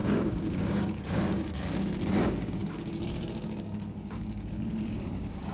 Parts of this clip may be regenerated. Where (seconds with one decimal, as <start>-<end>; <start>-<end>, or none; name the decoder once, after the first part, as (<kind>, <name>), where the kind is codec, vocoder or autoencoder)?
0.0-5.5 (codec, DAC)